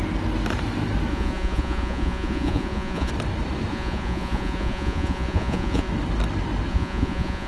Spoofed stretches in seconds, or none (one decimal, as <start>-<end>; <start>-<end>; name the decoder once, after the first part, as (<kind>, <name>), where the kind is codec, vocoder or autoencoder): 1.1-3.1 (vocoder, Vocos); 3.7-5.9; 6.7-7.5